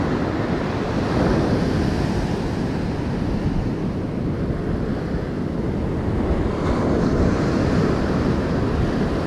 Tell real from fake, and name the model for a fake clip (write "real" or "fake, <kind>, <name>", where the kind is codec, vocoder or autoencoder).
real